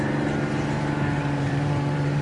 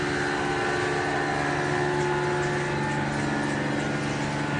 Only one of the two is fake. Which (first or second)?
first